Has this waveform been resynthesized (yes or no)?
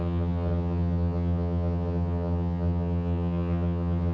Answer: yes